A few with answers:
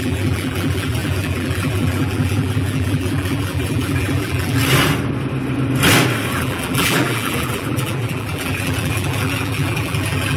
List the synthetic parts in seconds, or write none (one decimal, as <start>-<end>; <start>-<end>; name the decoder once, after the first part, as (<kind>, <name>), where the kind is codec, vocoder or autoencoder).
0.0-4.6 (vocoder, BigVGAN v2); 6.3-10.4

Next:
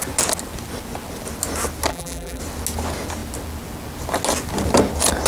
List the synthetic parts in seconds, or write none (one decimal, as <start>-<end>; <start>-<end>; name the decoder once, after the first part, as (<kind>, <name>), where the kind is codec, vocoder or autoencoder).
1.9-2.4 (vocoder, BigVGAN v2)

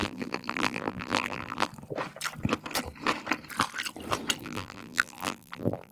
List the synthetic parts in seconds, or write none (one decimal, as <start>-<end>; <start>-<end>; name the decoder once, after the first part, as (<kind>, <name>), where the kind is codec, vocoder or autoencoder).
0.0-1.7 (vocoder, BigVGAN v2); 4.4-5.9